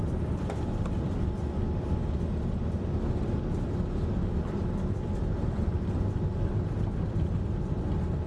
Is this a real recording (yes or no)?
yes